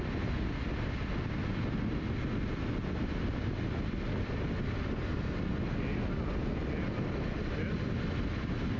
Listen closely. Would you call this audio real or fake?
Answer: real